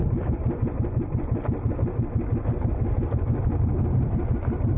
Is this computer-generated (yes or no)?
no